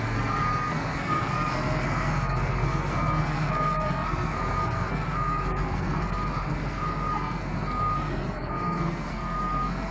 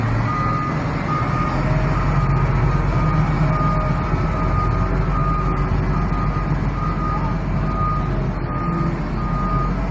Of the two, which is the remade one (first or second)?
first